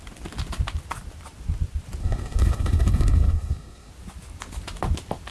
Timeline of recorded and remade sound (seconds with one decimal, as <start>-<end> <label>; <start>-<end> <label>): 0.0-2.0 recorded; 2.0-3.9 remade; 3.9-5.3 recorded